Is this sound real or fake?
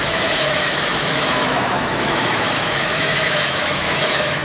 fake